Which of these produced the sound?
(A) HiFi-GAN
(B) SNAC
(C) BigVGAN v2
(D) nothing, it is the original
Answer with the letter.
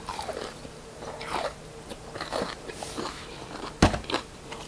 C